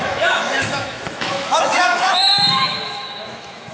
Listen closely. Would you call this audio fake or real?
fake